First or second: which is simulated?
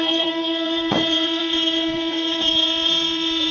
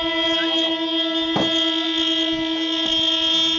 first